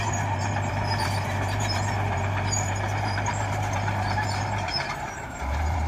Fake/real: fake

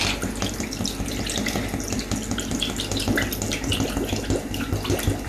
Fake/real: real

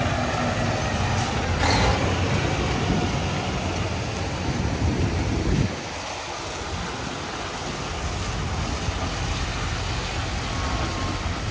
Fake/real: real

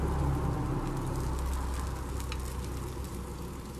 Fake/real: real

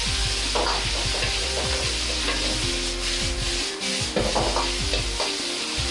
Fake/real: real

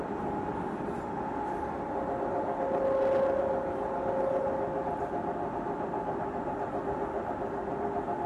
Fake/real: real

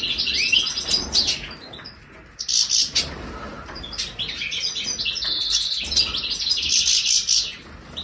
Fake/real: real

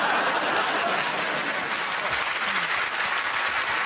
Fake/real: real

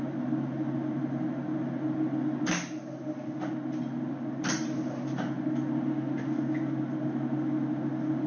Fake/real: real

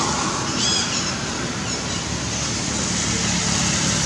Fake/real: real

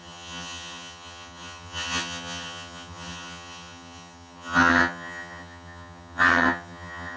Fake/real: fake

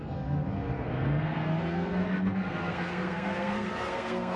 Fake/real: fake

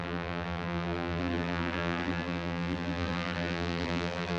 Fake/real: fake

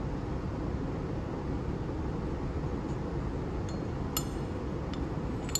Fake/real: real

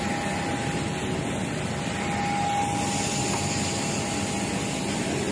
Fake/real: real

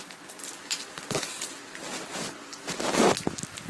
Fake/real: real